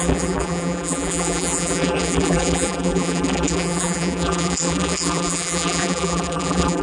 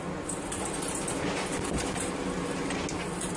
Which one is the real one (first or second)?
second